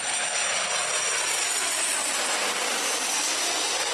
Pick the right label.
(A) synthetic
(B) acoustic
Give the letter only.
B